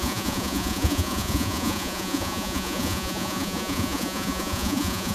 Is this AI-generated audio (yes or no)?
yes